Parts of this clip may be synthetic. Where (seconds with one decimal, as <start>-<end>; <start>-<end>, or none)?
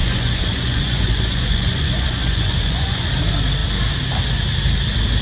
0.0-3.1